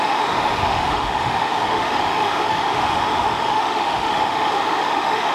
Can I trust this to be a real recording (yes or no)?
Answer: no